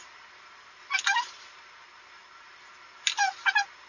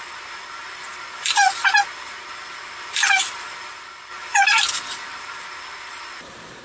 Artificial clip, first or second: second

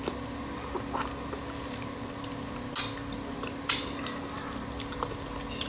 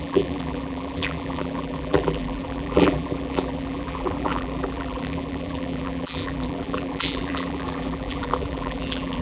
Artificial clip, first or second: second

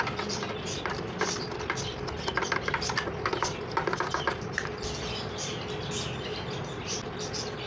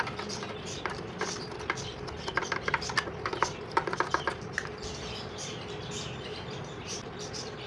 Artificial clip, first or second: second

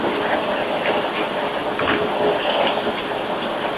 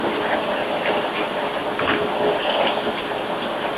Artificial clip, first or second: first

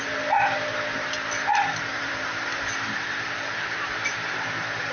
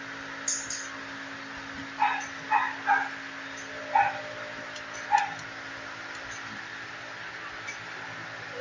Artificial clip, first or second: first